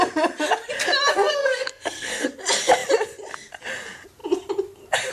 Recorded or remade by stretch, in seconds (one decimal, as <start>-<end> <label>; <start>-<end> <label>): 0.0-1.1 recorded; 1.1-2.3 remade; 2.3-5.1 recorded